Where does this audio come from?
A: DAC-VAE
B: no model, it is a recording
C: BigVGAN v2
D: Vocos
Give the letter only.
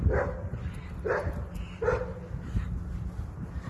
B